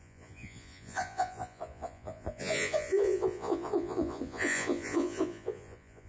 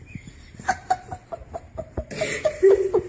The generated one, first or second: first